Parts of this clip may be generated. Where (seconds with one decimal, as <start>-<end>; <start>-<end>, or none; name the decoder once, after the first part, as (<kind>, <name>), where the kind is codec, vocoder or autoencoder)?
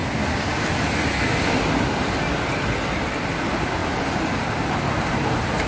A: 3.8-5.7 (vocoder, BigVGAN v2)